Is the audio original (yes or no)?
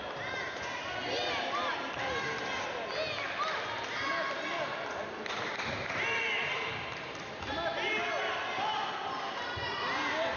yes